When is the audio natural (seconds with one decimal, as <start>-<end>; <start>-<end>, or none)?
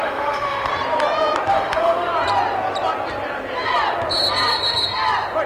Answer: 0.7-1.5; 2.1-5.5